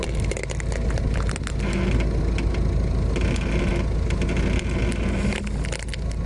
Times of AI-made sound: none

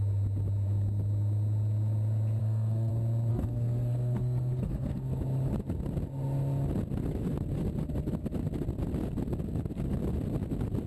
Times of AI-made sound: 2.4-2.9 (codec, SNAC); 3.3-5.2

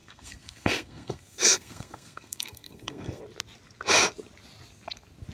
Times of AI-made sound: 0.0-3.2 (codec, SNAC)

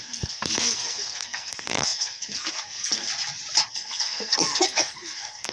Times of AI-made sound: 0.0-3.1 (codec, SNAC); 3.7-5.5

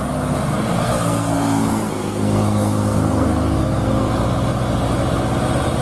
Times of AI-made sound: 0.8-4.1 (codec, SNAC)